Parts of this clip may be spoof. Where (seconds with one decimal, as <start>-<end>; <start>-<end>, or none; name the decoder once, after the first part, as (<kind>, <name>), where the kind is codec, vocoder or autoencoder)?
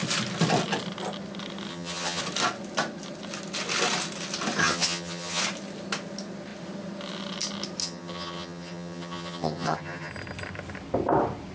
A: 1.7-2.2 (vocoder, HiFi-GAN); 4.6-5.4; 7.8-10.1